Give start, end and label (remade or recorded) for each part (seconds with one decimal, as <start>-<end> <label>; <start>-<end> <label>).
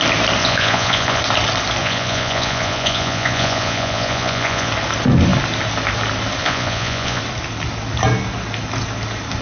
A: 0.0-0.4 recorded; 0.4-1.2 remade; 1.2-1.8 recorded; 1.8-4.7 remade; 4.7-6.4 recorded; 6.4-7.2 remade; 7.2-9.4 recorded